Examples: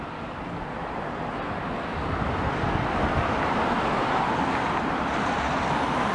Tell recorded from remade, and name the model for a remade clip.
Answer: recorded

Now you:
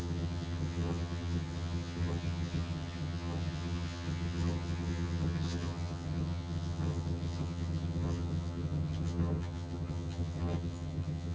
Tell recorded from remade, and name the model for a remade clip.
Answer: remade, vocoder, HiFi-GAN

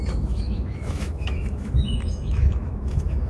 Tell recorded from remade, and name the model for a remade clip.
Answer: remade, autoencoder, DAC-VAE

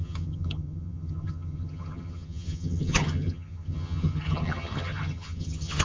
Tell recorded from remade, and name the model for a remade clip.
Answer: remade, vocoder, HiFi-GAN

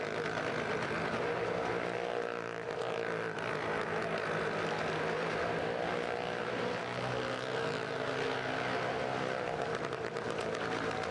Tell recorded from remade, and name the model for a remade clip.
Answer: recorded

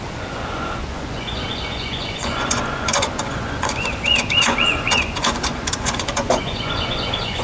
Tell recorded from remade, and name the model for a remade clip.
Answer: remade, vocoder, Vocos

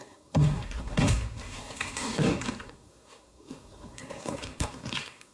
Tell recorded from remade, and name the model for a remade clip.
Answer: remade, codec, SNAC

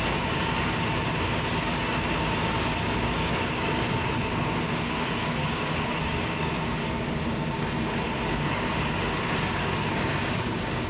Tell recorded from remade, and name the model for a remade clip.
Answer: remade, codec, DAC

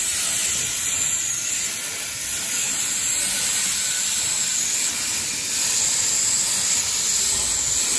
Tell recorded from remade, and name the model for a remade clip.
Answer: recorded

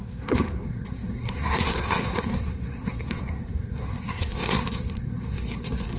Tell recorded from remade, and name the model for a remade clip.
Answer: remade, codec, SNAC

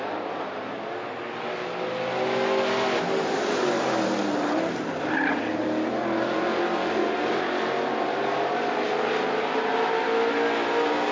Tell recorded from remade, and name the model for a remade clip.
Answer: recorded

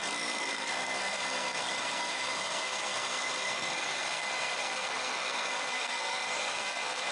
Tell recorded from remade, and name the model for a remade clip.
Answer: remade, codec, SNAC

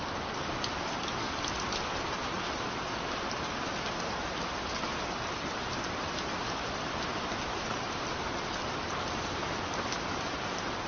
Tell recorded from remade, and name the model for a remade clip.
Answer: recorded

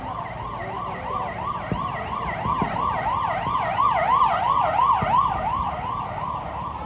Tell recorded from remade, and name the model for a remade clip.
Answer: recorded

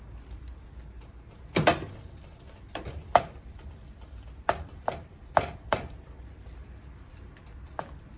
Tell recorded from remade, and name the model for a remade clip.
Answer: remade, vocoder, BigVGAN v2